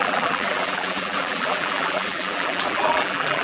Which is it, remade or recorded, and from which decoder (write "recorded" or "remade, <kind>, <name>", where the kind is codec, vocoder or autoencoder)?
remade, vocoder, BigVGAN v2